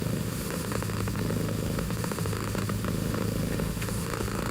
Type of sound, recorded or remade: remade